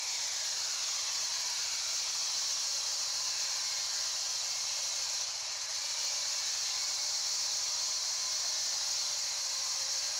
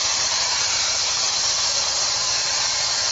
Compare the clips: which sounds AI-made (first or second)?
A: second